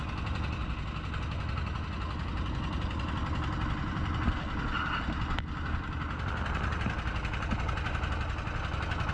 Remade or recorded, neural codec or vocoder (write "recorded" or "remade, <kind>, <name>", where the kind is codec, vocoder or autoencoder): recorded